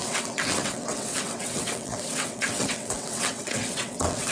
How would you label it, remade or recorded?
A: remade